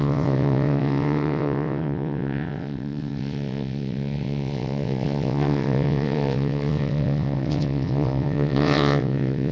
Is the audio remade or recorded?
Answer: remade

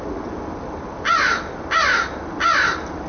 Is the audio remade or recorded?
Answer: recorded